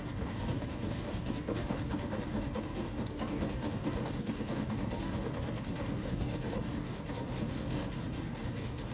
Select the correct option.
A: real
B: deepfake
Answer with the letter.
B